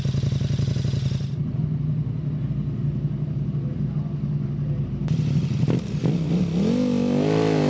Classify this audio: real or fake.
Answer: real